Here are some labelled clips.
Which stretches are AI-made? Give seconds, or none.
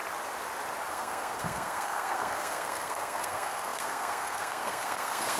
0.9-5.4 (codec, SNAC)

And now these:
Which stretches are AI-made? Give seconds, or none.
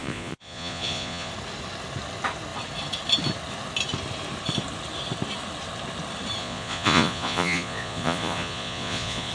0.0-1.3 (vocoder, Vocos); 6.4-9.3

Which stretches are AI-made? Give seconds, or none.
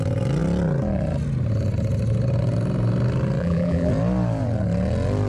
3.4-3.9 (vocoder, BigVGAN v2)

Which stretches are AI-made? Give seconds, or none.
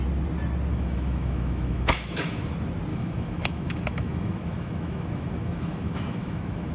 0.7-2.5 (autoencoder, DAC-VAE); 2.9-6.7